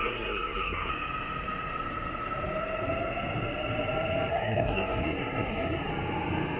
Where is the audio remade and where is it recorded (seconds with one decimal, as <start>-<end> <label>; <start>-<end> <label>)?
0.0-0.9 remade; 0.9-4.3 recorded; 4.3-5.9 remade; 5.9-6.6 recorded